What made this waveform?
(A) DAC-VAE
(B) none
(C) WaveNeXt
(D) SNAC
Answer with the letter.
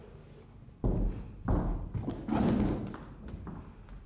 B